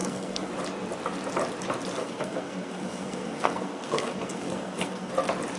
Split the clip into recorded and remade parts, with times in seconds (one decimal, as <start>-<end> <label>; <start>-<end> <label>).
0.0-0.5 remade; 0.5-2.0 recorded; 2.0-5.1 remade; 5.1-5.6 recorded